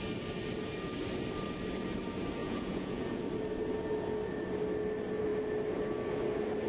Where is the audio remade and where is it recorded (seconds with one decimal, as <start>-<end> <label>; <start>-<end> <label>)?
0.0-2.4 recorded; 2.4-3.2 remade; 3.2-6.7 recorded